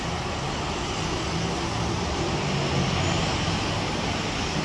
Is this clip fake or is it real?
real